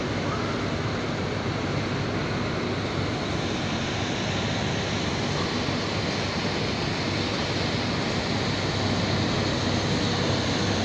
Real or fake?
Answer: real